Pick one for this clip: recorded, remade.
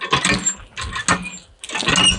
recorded